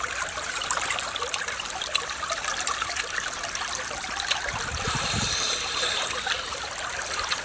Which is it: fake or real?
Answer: fake